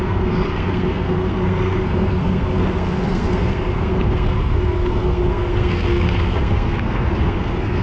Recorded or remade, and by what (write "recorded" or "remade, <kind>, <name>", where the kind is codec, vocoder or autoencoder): remade, codec, SNAC